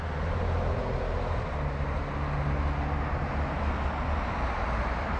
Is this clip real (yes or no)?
yes